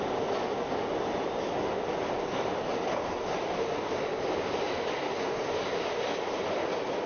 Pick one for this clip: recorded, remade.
recorded